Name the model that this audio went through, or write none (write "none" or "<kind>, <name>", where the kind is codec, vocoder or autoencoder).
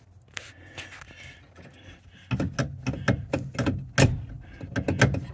none